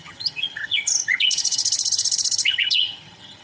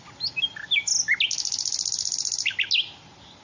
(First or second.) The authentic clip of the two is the second